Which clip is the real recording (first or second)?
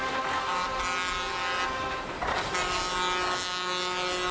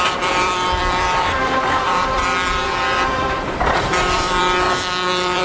first